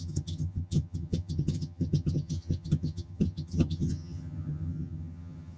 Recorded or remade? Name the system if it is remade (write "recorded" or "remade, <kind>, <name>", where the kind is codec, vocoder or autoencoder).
remade, vocoder, HiFi-GAN